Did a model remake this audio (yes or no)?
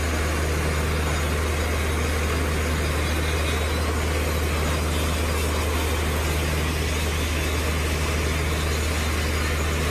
no